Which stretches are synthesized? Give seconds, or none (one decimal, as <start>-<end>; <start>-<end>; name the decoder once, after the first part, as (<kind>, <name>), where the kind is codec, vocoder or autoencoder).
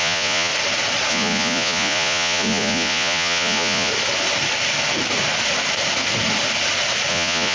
0.0-0.5 (vocoder, Vocos); 1.1-3.9; 7.1-7.5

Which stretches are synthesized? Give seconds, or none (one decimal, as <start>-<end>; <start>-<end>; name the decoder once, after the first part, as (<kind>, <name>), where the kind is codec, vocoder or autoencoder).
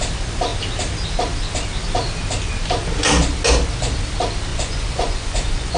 4.5-5.8 (vocoder, Vocos)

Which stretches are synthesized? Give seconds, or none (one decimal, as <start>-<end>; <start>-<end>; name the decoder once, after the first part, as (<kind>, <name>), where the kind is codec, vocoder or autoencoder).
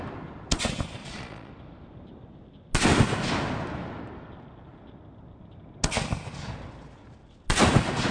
1.0-1.5 (vocoder, Vocos)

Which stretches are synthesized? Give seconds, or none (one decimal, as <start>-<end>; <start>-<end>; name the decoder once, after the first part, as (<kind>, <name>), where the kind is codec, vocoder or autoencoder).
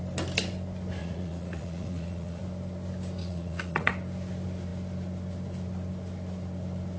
1.0-2.4 (vocoder, Vocos); 3.2-3.9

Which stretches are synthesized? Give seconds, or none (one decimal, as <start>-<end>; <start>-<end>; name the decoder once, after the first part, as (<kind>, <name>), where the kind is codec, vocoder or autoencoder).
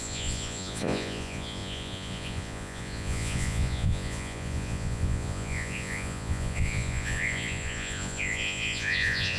0.0-9.4 (vocoder, Vocos)